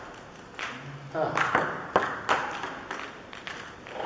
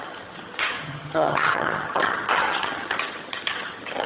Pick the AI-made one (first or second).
second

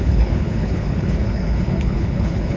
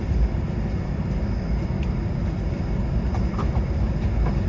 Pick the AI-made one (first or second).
first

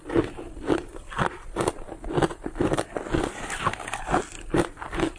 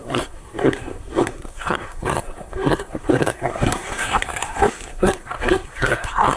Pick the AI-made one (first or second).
second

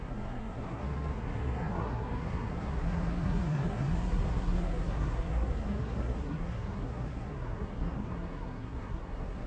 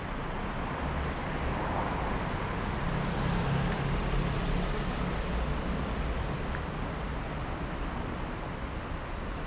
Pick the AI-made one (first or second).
first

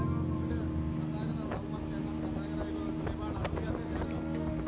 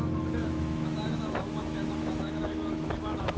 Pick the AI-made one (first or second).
second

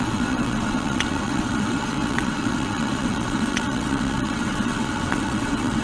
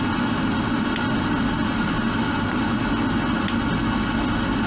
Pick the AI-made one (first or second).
first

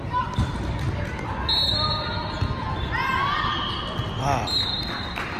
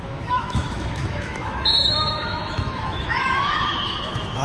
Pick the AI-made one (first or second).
second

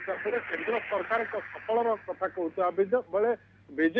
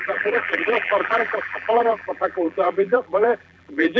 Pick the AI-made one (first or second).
second